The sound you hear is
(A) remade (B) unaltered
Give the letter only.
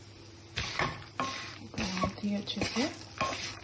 B